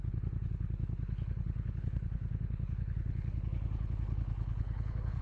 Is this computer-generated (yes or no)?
yes